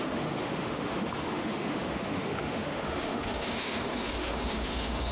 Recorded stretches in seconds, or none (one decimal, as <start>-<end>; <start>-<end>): none